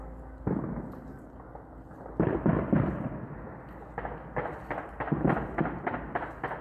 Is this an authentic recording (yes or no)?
yes